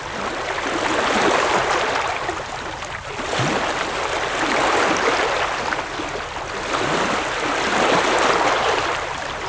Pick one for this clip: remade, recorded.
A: recorded